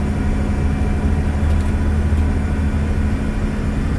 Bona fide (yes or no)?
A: yes